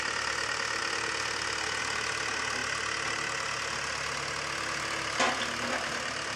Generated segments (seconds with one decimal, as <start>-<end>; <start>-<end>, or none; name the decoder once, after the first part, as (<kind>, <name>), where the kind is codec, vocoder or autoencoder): none

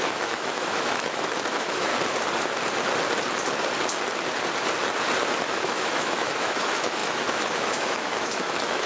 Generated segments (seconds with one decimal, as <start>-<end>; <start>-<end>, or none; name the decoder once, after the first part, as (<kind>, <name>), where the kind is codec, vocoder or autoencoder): 0.0-1.9 (autoencoder, DAC-VAE); 5.5-8.9

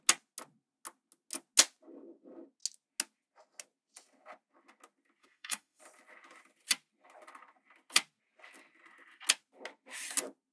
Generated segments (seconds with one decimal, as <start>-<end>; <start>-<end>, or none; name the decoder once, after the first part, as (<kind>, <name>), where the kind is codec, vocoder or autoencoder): 5.2-5.8 (autoencoder, DAC-VAE)

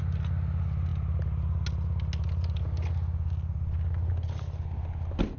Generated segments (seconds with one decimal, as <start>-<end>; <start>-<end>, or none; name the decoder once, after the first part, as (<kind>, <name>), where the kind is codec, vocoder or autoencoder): none